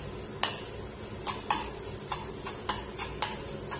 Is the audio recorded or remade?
recorded